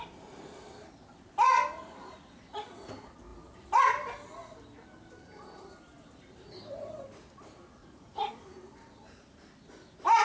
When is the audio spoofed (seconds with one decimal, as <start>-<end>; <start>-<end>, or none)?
7.8-8.3